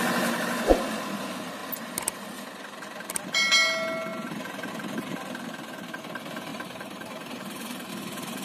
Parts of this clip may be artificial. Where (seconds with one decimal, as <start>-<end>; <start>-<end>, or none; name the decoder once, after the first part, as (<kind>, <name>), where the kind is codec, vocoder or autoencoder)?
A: 6.5-7.9 (vocoder, BigVGAN v2)